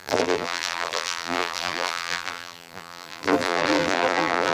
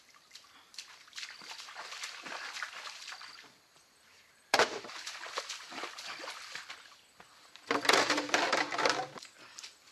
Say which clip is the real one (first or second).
second